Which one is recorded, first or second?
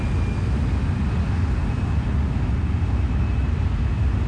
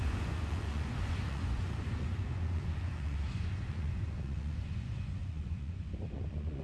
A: first